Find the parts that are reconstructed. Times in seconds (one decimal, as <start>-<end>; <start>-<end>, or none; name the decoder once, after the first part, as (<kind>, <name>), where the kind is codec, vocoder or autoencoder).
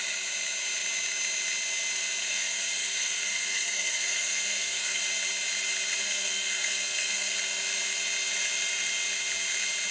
2.2-5.0 (codec, SNAC); 6.0-7.3